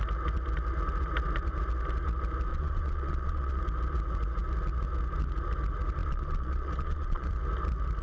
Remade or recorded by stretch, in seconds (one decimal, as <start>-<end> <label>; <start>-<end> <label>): 0.0-2.5 recorded; 2.5-3.6 remade; 3.6-6.0 recorded; 6.0-7.3 remade; 7.3-8.0 recorded